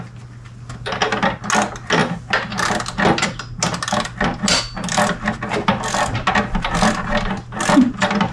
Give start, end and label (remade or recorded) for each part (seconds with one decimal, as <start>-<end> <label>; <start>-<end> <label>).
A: 0.0-8.3 recorded